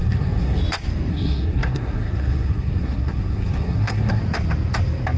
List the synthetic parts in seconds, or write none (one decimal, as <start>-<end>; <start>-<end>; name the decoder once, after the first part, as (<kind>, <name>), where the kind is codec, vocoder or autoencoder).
0.0-0.6 (codec, SNAC); 1.1-4.2